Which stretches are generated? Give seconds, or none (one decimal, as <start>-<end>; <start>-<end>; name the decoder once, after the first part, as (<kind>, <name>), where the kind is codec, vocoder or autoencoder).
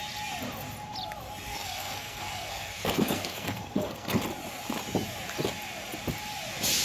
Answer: 1.5-4.2 (codec, SNAC)